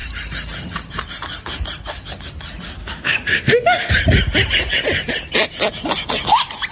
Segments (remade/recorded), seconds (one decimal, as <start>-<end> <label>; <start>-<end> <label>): 0.0-2.8 recorded; 2.8-3.9 remade; 3.9-6.7 recorded